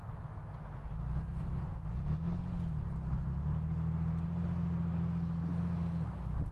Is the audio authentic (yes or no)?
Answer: yes